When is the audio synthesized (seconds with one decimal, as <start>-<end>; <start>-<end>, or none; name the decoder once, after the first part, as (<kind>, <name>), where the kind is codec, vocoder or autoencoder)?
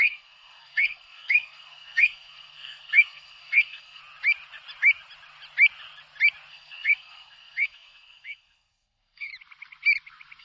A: 0.0-4.0 (codec, SNAC); 6.5-9.3